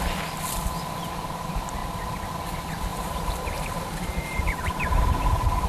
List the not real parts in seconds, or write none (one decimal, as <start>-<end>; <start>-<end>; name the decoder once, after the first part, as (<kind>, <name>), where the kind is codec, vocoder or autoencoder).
2.9-5.3 (vocoder, BigVGAN v2)